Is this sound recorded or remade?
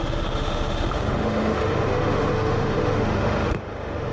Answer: remade